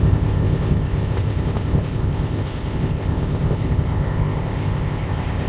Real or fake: fake